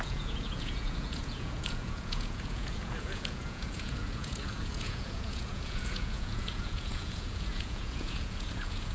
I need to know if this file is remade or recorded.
remade